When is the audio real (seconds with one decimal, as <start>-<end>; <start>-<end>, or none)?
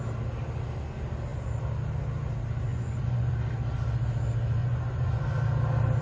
0.0-2.7; 3.3-4.6; 5.2-6.0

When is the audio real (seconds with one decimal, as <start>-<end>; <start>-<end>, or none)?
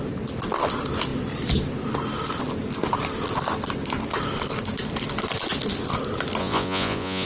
0.0-6.4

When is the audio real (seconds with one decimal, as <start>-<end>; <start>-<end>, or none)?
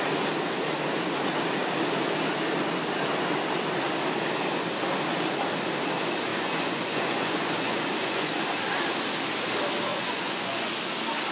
0.0-6.3; 8.3-9.9; 10.7-11.3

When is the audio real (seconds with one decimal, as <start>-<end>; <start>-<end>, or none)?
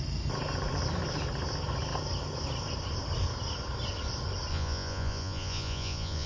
0.0-4.5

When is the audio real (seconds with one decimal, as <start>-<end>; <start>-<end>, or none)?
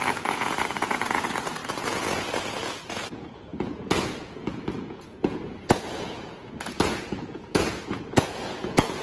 none